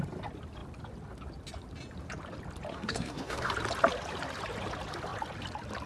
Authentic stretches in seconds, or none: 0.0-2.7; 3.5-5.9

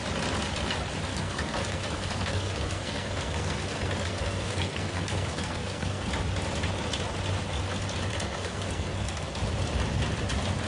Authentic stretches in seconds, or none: 0.0-1.1; 6.1-8.1; 9.4-10.7

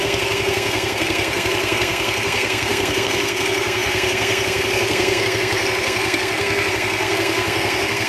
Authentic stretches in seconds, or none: none

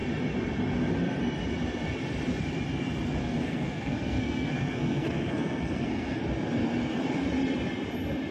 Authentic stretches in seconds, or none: 0.0-3.2; 6.2-8.3

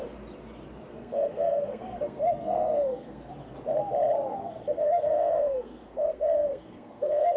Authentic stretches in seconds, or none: 0.0-0.9; 3.3-4.3

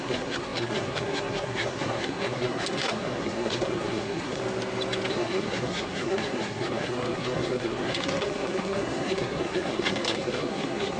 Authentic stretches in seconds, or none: 4.4-5.1

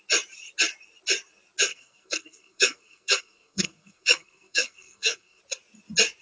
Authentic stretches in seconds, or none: 0.0-1.7; 5.4-6.2

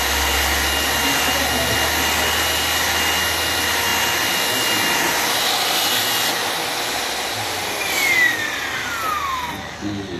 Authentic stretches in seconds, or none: 0.0-10.2